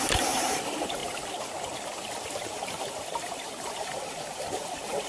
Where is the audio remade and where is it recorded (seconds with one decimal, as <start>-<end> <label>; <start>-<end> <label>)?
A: 0.0-1.0 remade; 1.0-2.3 recorded; 2.3-5.1 remade